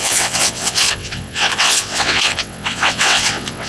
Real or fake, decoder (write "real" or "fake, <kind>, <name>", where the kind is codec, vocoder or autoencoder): fake, vocoder, WaveNeXt